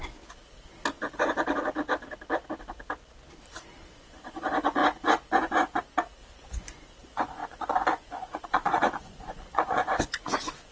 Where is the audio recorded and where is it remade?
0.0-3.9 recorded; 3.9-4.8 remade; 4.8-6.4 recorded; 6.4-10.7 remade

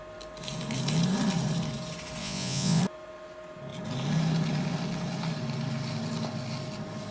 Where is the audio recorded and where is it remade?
0.0-2.2 recorded; 2.2-2.8 remade; 2.8-7.1 recorded

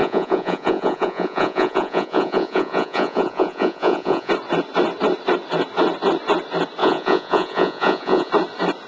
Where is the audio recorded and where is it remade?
0.0-4.3 remade; 4.3-6.8 recorded; 6.8-8.3 remade; 8.3-8.9 recorded

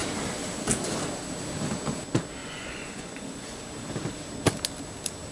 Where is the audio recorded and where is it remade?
0.0-2.4 recorded; 2.4-3.6 remade; 3.6-5.3 recorded

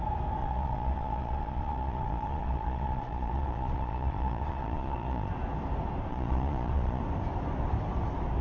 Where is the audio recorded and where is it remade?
0.0-0.4 recorded; 0.4-5.3 remade; 5.3-6.1 recorded; 6.1-7.0 remade; 7.0-8.4 recorded